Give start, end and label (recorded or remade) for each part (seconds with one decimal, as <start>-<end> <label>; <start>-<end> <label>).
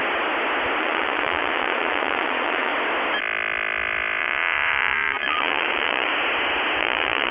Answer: 0.0-0.8 recorded; 0.8-2.7 remade; 2.7-4.2 recorded; 4.2-6.1 remade; 6.1-6.8 recorded; 6.8-7.3 remade